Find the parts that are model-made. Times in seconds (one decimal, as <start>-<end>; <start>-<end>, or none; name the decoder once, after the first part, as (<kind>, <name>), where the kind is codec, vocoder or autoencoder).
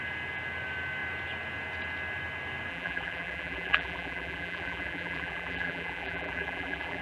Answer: 2.7-7.0 (vocoder, BigVGAN v2)